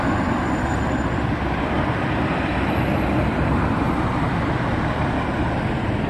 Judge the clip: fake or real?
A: fake